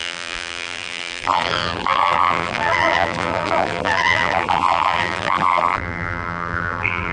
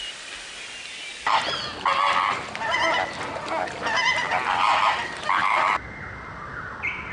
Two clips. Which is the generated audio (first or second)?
first